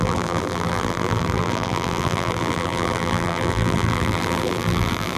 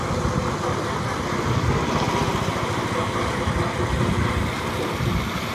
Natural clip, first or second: second